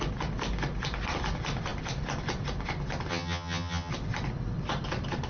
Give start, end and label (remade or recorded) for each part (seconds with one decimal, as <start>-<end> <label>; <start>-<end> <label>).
0.0-3.1 recorded; 3.1-3.9 remade; 3.9-5.3 recorded

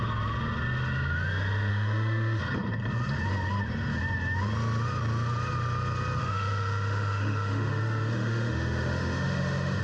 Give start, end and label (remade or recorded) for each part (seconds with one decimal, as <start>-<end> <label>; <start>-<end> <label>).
0.0-1.7 recorded; 1.7-2.4 remade; 2.4-6.2 recorded; 6.2-9.8 remade